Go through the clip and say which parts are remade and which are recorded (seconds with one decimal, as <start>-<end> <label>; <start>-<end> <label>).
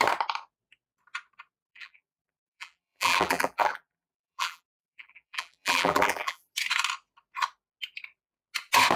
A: 0.0-1.6 recorded; 1.6-6.5 remade; 6.5-9.0 recorded